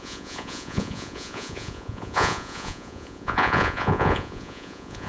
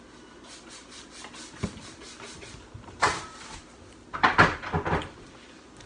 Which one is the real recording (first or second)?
second